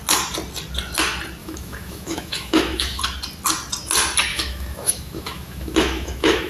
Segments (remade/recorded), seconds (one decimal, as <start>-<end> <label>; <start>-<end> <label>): 0.0-1.4 recorded; 1.4-3.0 remade; 3.0-4.3 recorded; 4.3-6.5 remade